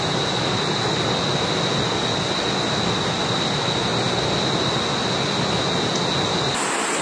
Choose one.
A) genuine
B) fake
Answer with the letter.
A